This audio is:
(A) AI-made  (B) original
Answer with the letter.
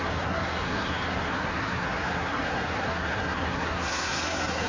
A